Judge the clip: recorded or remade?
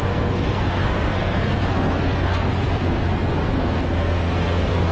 remade